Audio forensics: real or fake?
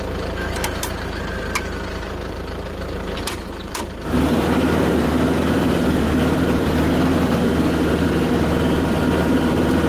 fake